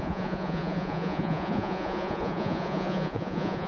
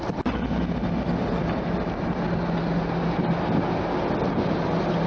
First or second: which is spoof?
first